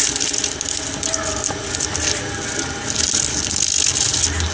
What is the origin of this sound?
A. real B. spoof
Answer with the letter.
A